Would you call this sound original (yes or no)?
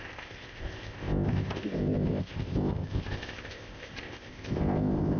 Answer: no